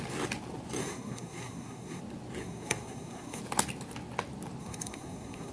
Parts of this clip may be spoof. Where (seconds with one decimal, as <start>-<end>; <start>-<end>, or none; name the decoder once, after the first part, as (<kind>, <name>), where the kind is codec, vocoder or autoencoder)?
0.8-2.0 (codec, SNAC); 2.4-3.4; 4.6-5.5

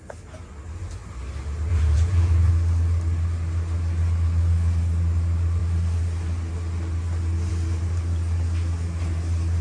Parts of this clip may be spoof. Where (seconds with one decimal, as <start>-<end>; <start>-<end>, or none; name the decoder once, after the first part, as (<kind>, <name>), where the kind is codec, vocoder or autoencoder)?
1.7-2.5 (vocoder, Vocos)

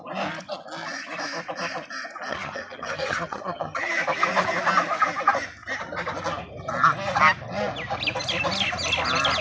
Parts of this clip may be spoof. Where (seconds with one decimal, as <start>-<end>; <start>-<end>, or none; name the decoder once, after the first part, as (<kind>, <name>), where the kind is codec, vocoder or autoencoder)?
2.3-3.9 (vocoder, HiFi-GAN)

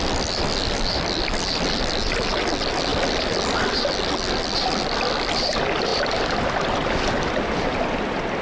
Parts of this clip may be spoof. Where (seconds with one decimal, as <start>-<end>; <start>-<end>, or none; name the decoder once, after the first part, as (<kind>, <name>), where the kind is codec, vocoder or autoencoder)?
none

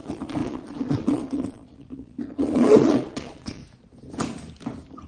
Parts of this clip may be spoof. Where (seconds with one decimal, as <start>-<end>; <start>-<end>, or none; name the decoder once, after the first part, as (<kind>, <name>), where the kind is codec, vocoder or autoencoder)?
0.0-3.6 (vocoder, Vocos)

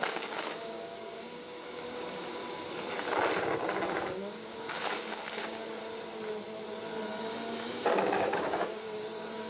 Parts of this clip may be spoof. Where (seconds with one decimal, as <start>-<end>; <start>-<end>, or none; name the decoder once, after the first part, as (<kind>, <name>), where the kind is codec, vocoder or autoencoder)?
0.0-2.4 (codec, DAC); 3.9-5.8; 8.0-9.5

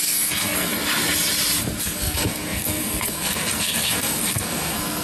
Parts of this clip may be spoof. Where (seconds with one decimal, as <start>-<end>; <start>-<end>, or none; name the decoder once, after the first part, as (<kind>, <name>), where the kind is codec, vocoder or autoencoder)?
0.0-0.7 (codec, SNAC); 1.8-5.0

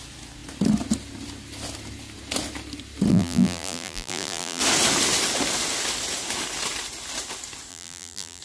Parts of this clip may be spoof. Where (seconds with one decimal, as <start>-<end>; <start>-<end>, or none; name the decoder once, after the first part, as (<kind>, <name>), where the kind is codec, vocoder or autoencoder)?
3.1-4.6 (vocoder, BigVGAN v2); 7.7-8.4